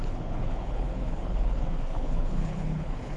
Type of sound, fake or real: fake